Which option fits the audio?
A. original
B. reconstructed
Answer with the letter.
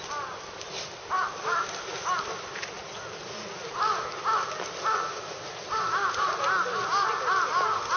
A